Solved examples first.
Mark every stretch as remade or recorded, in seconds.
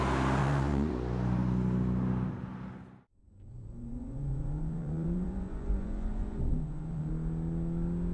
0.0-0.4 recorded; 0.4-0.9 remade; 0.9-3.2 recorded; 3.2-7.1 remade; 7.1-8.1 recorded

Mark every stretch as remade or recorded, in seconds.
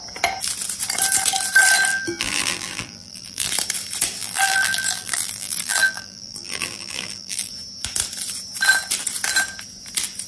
0.0-1.9 recorded; 1.9-3.5 remade; 3.5-4.2 recorded; 4.2-7.5 remade; 7.5-10.3 recorded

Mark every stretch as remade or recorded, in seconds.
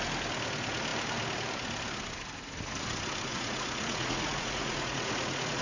0.0-3.3 recorded; 3.3-5.6 remade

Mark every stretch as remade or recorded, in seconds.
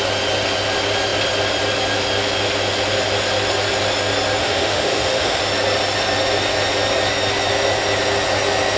0.0-4.4 recorded; 4.4-5.4 remade; 5.4-8.8 recorded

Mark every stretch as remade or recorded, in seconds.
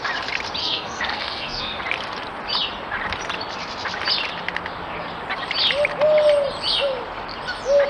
0.0-0.6 recorded; 0.6-1.8 remade; 1.8-7.9 recorded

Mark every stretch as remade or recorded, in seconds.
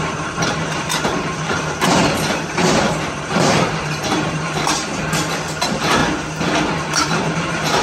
0.0-4.9 remade; 4.9-5.6 recorded; 5.6-6.0 remade; 6.0-7.0 recorded; 7.0-7.8 remade